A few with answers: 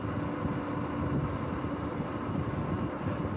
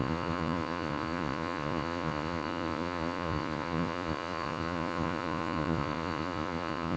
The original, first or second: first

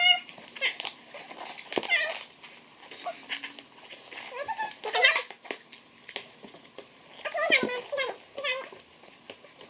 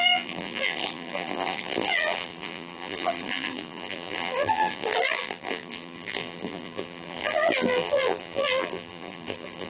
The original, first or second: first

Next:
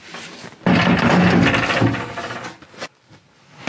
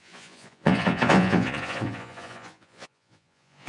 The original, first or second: first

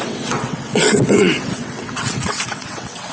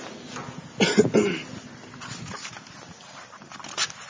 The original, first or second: second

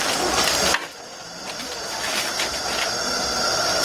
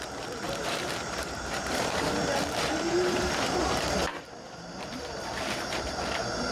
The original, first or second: first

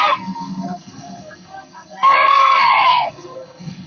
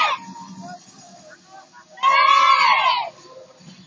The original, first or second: second